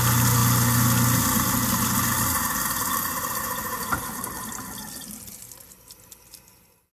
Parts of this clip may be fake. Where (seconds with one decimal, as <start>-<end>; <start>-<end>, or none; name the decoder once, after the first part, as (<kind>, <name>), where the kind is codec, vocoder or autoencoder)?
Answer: none